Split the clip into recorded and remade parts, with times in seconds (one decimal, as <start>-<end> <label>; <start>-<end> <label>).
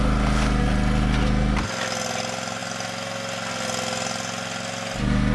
0.0-5.3 recorded